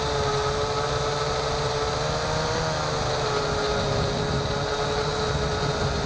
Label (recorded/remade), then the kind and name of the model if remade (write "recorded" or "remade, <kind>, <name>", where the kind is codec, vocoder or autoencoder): recorded